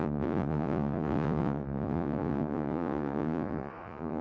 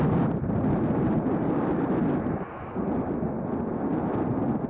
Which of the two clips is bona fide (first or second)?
second